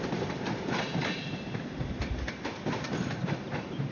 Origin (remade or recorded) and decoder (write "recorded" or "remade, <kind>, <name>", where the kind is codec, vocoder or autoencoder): remade, vocoder, BigVGAN v2